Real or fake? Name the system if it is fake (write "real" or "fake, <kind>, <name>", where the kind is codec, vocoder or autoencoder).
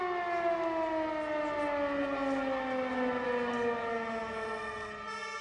real